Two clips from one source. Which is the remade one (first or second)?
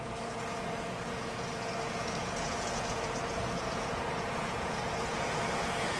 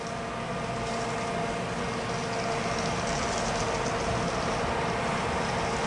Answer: first